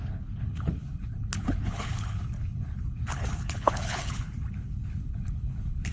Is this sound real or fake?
fake